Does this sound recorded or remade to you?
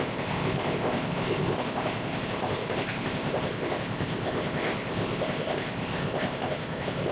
remade